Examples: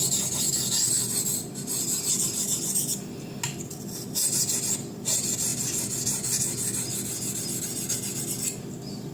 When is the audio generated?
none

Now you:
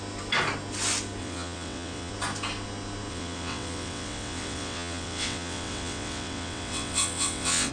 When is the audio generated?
1.2-2.1 (vocoder, WaveNeXt); 3.1-7.7

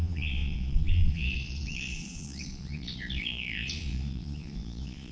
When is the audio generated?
0.0-5.1 (vocoder, Vocos)

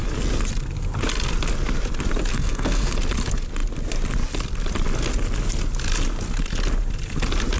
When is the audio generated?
2.3-2.9 (codec, SNAC)

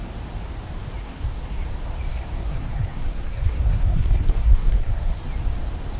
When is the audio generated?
1.0-1.6 (codec, SNAC); 2.1-5.2

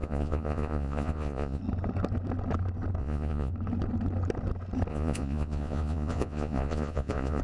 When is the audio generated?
0.0-1.6 (vocoder, Vocos); 3.0-3.5; 4.9-7.4

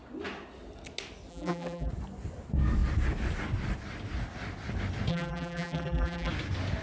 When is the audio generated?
1.3-1.9 (vocoder, BigVGAN v2); 5.1-6.3

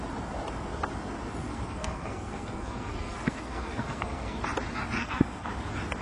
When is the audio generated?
1.4-4.4 (codec, SNAC); 5.0-5.5